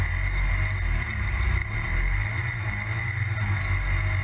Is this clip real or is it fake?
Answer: real